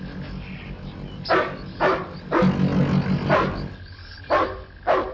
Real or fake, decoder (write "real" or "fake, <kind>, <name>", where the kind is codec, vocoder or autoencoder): real